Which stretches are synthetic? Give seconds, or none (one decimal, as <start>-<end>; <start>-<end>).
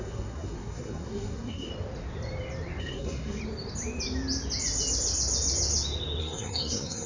0.0-1.7; 2.8-3.4; 6.2-7.1